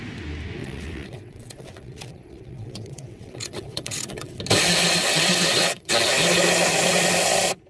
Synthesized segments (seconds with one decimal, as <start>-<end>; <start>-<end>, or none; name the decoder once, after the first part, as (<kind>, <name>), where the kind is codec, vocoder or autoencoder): 0.6-4.4 (vocoder, WaveNeXt); 5.0-5.9